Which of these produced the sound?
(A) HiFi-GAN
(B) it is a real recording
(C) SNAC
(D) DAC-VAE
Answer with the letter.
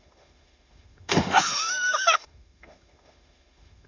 D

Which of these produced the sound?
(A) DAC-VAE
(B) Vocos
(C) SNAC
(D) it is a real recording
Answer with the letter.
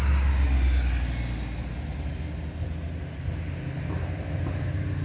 D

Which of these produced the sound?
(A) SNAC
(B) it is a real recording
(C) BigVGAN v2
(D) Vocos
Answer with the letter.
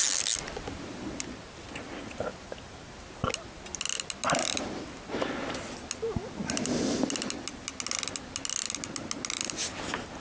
B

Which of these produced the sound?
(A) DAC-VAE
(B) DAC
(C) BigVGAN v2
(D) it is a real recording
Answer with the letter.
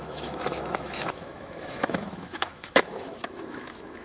A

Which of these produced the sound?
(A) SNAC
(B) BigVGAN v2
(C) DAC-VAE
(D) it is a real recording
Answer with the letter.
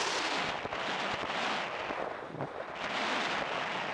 D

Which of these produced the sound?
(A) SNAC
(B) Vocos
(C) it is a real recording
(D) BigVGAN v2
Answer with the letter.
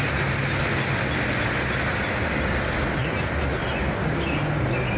C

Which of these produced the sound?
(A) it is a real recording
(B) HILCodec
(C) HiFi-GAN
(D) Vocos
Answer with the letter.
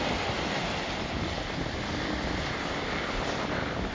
A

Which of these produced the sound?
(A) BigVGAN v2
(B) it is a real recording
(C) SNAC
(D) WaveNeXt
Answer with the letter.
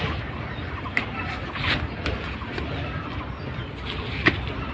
B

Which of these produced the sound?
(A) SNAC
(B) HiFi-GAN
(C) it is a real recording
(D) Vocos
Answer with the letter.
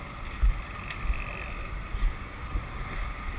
C